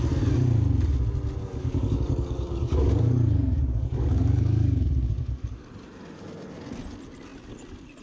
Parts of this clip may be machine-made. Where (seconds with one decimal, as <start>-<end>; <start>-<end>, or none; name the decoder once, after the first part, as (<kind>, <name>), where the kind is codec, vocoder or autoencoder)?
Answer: 1.4-5.7 (codec, DAC)

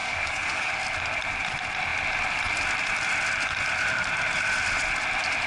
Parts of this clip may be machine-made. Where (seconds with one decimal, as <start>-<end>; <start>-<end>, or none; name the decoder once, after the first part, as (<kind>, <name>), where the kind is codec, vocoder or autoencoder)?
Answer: 0.0-0.7 (codec, DAC)

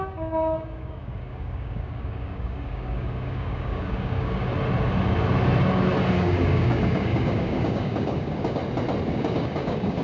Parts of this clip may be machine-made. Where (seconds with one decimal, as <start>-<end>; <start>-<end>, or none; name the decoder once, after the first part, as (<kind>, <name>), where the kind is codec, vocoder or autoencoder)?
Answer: 0.0-4.5 (codec, DAC); 6.2-8.6; 9.1-10.0